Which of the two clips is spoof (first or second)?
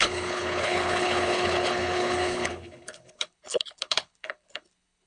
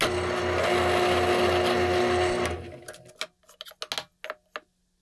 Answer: first